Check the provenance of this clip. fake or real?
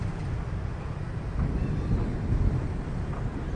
real